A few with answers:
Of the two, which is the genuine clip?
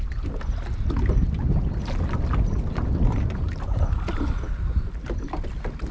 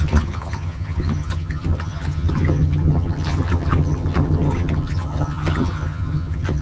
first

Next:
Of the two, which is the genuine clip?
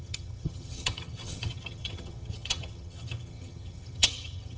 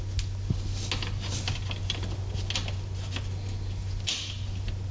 second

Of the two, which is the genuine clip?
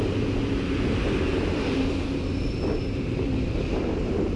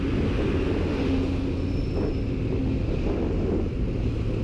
second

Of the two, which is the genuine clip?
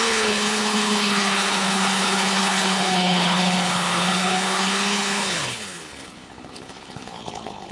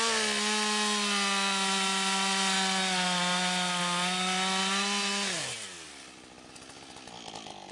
second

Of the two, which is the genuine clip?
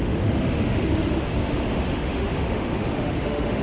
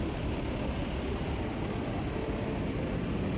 second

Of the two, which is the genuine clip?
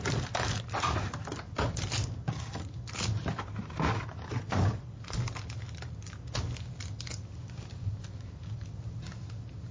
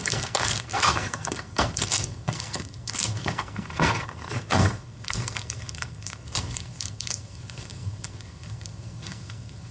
first